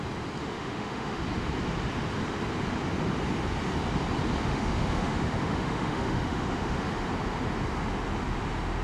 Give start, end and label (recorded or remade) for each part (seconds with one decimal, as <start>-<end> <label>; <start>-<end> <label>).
0.0-0.4 recorded; 0.4-1.2 remade; 1.2-4.5 recorded; 4.5-6.9 remade; 6.9-8.8 recorded

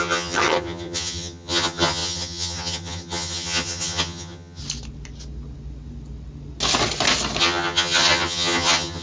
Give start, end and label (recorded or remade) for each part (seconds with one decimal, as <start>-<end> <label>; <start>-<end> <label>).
0.0-4.6 remade; 4.6-7.4 recorded; 7.4-9.0 remade

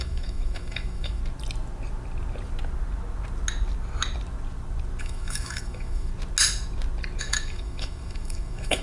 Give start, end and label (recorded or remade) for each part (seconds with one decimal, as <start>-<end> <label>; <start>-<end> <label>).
0.0-1.2 remade; 1.2-5.0 recorded; 5.0-6.1 remade; 6.1-7.2 recorded; 7.2-8.8 remade

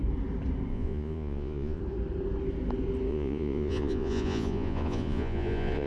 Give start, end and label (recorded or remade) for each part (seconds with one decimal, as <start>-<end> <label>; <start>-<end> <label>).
0.0-0.7 recorded; 0.7-1.8 remade; 1.8-3.1 recorded; 3.1-5.9 remade

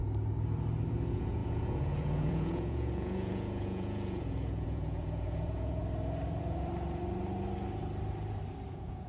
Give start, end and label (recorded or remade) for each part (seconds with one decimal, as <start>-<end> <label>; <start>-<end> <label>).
0.0-0.9 recorded; 0.9-5.8 remade; 5.8-8.7 recorded; 8.7-9.1 remade

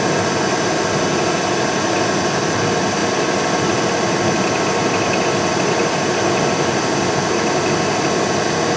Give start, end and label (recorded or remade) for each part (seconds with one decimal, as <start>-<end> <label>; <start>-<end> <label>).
0.0-8.8 recorded

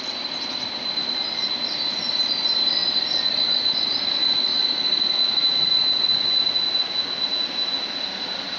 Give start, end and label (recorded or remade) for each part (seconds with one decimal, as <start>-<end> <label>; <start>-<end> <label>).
0.0-1.0 remade; 1.0-1.5 recorded; 1.5-2.8 remade; 2.8-4.0 recorded; 4.0-4.5 remade; 4.5-8.0 recorded; 8.0-8.6 remade

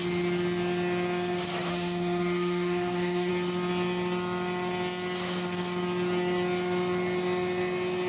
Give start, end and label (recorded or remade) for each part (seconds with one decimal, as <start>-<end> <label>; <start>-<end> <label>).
0.0-1.7 recorded; 1.7-3.3 remade; 3.3-8.1 recorded